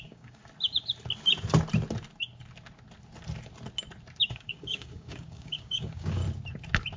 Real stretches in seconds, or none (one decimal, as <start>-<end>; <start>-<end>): 0.4-4.2; 6.2-7.0